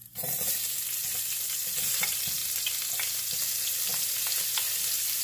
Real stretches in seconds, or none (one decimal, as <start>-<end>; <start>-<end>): 2.4-5.2